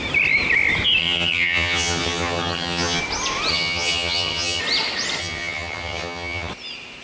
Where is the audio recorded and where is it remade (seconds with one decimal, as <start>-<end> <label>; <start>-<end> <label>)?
0.0-1.0 recorded; 1.0-3.0 remade; 3.0-3.5 recorded; 3.5-4.6 remade; 4.6-5.2 recorded; 5.2-6.5 remade; 6.5-7.0 recorded